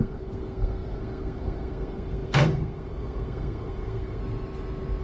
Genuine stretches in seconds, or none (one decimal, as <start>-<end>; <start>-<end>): 4.2-5.0